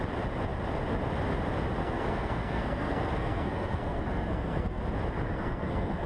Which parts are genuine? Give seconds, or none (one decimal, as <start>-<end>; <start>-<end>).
0.0-1.8; 4.8-5.3